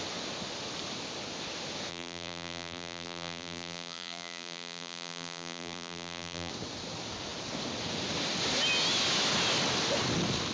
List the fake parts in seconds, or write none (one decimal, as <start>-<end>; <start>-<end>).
1.9-6.5